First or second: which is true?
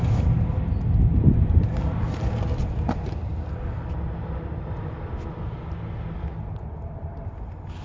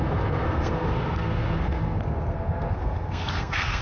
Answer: first